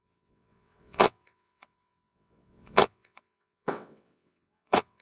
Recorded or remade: remade